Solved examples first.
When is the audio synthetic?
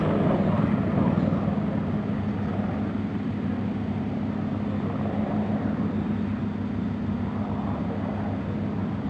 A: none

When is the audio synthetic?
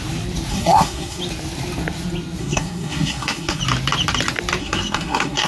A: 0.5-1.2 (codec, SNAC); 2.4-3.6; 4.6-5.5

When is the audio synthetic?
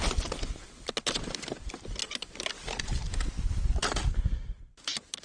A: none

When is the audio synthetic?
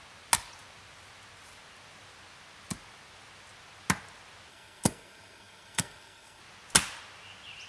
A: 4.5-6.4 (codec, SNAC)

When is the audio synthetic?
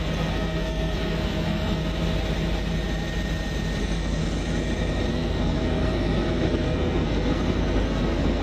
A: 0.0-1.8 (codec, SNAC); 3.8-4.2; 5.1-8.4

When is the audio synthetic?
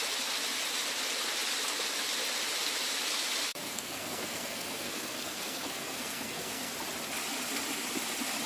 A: 3.5-6.7 (codec, SNAC)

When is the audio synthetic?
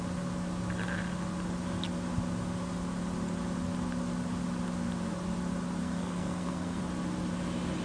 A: 5.8-6.8 (codec, SNAC)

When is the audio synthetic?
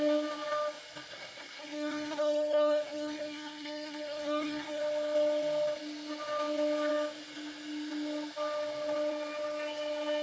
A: 1.1-4.8 (codec, SNAC)